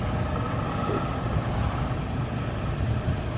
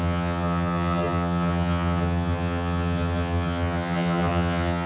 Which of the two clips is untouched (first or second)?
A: first